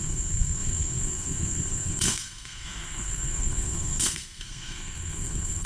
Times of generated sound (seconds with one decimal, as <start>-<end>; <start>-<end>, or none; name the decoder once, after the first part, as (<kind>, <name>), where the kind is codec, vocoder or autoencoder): 0.0-5.7 (codec, SNAC)